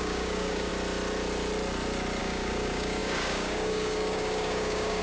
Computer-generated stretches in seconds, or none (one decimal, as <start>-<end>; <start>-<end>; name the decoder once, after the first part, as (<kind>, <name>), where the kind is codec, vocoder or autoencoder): 0.0-0.7 (codec, DAC); 2.2-5.0